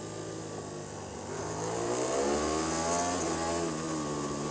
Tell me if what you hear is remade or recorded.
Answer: recorded